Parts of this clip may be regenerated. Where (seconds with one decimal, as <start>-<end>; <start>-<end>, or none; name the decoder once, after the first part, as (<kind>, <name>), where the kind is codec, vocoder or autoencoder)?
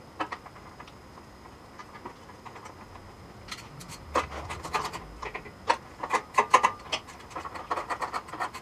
none